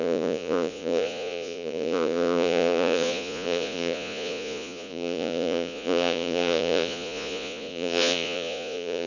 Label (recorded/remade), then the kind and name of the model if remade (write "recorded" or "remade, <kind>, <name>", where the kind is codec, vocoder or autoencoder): remade, vocoder, Vocos